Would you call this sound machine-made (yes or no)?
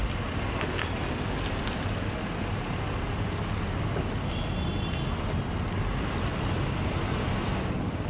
no